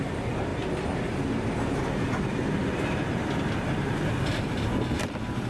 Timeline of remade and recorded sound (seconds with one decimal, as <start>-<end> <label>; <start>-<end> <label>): 0.0-0.5 remade; 0.5-1.8 recorded; 1.8-5.5 remade